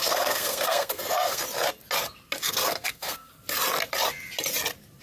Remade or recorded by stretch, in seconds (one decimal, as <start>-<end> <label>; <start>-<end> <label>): 0.0-1.4 remade; 1.4-2.4 recorded; 2.4-3.3 remade; 3.3-5.0 recorded